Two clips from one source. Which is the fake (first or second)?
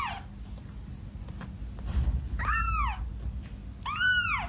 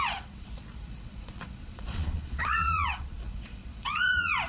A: second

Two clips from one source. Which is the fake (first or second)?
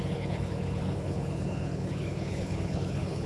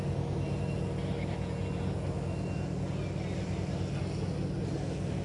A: first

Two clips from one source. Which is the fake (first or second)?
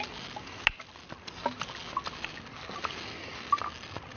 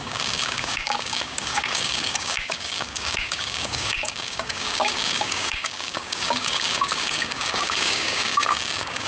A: second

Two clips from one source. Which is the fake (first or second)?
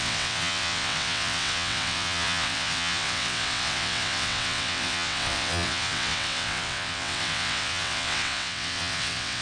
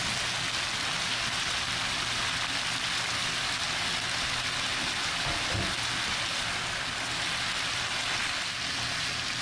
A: first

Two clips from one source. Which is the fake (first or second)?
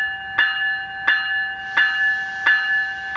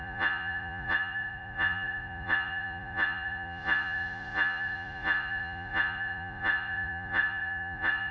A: second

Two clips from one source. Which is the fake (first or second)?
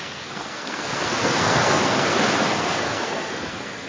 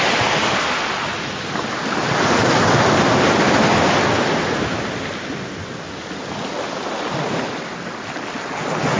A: first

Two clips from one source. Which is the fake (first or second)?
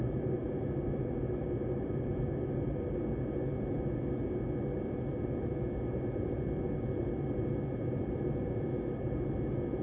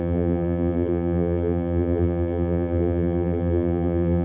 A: second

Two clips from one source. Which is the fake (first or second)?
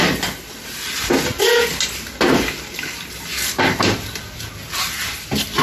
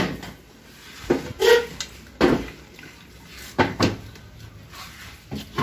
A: first